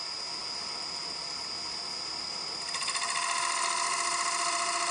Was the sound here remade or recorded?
recorded